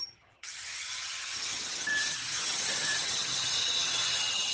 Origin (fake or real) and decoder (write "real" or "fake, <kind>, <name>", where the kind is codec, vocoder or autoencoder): fake, vocoder, HiFi-GAN